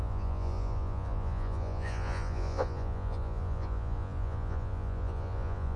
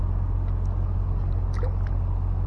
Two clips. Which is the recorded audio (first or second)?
second